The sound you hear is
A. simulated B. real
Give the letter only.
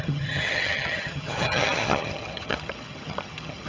A